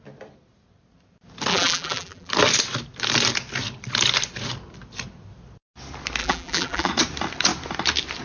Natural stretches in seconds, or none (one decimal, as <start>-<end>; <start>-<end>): 0.0-1.5; 2.3-6.2; 6.9-8.2